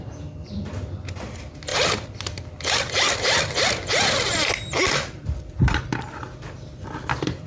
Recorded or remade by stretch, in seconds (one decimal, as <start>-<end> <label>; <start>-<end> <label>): 0.0-7.5 remade